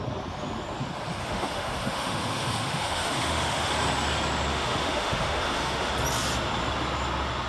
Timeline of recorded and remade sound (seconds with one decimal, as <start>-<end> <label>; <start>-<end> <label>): 0.0-1.2 recorded; 1.2-3.7 remade; 3.7-4.5 recorded; 4.5-5.9 remade; 5.9-7.5 recorded